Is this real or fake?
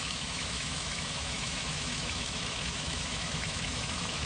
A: fake